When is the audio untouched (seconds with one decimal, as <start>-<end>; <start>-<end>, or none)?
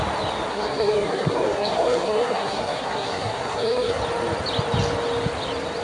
0.0-0.5; 4.0-5.8